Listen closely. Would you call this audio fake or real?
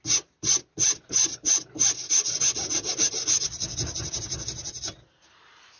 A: real